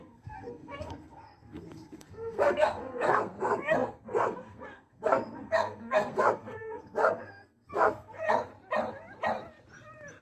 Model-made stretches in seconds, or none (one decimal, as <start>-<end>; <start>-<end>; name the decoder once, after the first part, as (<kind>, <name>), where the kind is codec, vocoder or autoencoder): 0.0-8.5 (codec, SNAC)